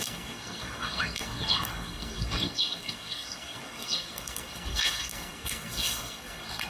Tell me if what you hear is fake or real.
fake